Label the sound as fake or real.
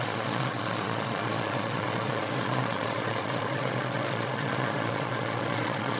fake